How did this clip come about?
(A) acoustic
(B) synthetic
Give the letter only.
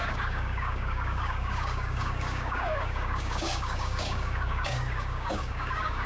B